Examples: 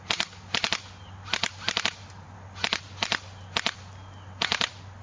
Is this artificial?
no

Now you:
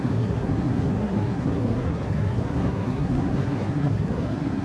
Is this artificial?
yes